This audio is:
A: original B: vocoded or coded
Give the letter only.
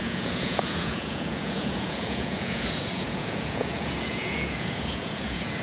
B